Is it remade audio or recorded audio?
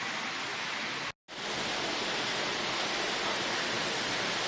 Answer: recorded